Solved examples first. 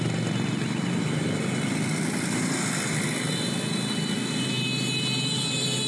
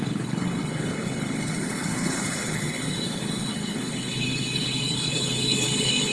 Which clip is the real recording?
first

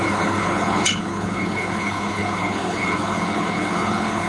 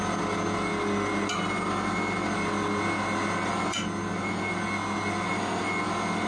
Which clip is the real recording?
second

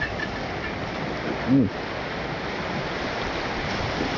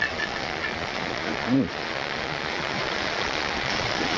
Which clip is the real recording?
first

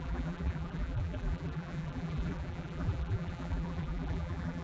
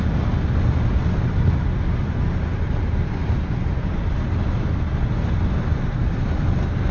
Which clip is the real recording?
second